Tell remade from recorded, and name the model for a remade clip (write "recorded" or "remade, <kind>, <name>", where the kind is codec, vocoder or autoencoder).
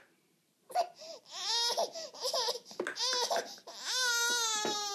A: recorded